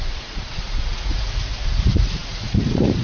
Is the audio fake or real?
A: fake